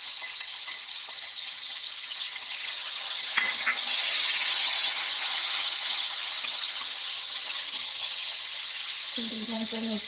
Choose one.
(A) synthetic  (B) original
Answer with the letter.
A